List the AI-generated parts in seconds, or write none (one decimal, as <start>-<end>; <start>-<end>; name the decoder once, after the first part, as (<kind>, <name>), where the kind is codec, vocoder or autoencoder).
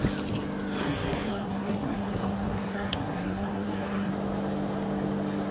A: 0.8-4.1 (codec, SNAC)